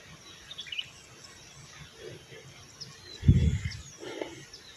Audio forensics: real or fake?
real